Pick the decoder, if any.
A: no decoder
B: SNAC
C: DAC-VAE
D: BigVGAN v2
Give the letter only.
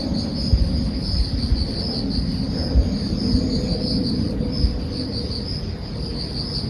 A